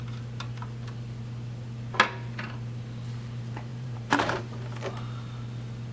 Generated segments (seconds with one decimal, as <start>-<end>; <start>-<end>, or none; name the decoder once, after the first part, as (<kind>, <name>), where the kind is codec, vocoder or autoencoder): 3.7-4.4 (vocoder, BigVGAN v2)